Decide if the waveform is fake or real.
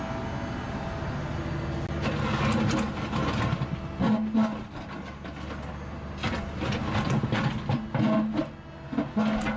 real